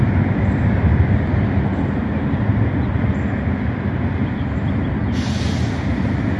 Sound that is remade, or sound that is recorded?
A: recorded